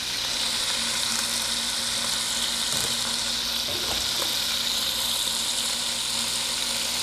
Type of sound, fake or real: real